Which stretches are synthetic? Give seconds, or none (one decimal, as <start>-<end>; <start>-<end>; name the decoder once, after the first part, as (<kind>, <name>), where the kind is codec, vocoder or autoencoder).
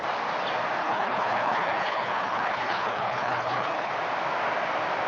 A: 0.8-3.9 (codec, HILCodec)